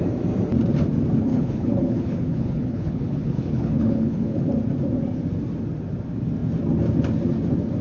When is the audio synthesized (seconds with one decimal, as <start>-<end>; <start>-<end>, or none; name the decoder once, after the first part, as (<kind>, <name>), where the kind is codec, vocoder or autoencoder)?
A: 1.3-4.5 (codec, HILCodec)

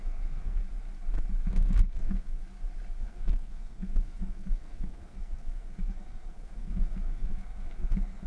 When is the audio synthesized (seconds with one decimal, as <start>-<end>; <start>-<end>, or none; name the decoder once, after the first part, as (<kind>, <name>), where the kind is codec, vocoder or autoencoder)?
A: 0.0-0.6 (codec, SNAC); 1.5-2.4; 3.0-8.3

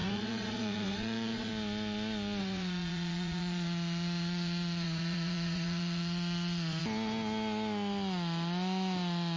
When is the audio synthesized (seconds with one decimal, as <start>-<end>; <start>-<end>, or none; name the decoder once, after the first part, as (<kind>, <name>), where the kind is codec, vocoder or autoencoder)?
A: 0.0-1.5 (vocoder, Vocos); 2.4-6.8